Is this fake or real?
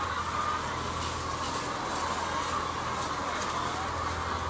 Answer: real